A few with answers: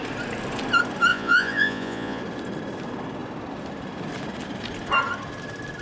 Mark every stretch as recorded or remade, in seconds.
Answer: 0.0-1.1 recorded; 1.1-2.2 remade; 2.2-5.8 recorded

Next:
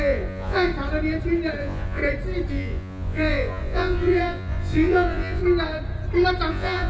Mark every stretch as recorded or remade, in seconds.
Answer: 0.0-0.7 remade; 0.7-1.6 recorded; 1.6-2.0 remade; 2.0-2.5 recorded; 2.5-5.4 remade; 5.4-6.5 recorded; 6.5-6.9 remade

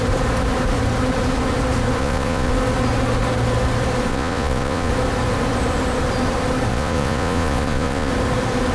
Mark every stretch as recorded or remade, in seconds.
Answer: 0.0-2.0 recorded; 2.0-2.5 remade; 2.5-4.1 recorded; 4.1-4.9 remade; 4.9-6.7 recorded; 6.7-8.1 remade; 8.1-8.7 recorded

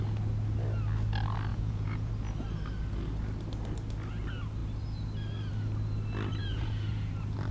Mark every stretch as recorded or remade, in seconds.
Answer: 0.0-1.5 recorded; 1.5-2.1 remade; 2.1-6.4 recorded; 6.4-7.1 remade; 7.1-7.5 recorded